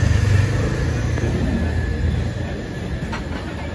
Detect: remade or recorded recorded